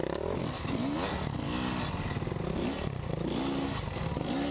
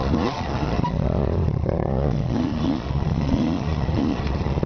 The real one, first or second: first